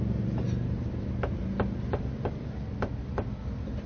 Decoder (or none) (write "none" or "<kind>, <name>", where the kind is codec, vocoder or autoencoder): none